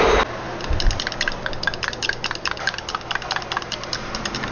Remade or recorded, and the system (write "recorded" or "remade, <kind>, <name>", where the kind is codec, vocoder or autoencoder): recorded